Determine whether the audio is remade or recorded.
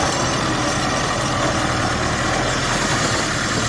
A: recorded